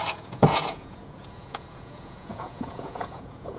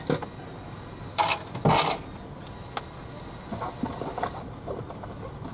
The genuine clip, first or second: second